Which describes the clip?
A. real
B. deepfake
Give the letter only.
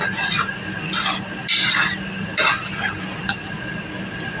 A